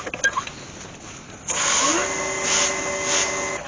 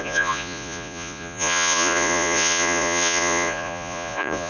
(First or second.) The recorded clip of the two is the first